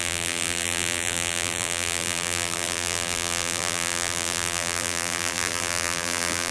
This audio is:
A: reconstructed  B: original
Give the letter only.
A